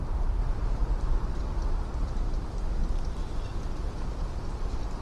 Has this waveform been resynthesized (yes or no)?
no